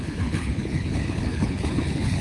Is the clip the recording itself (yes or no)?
no